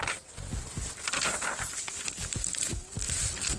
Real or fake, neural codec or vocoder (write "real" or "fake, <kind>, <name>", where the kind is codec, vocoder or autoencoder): real